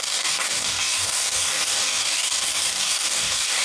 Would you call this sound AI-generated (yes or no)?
yes